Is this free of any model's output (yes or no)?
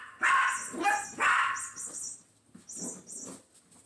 yes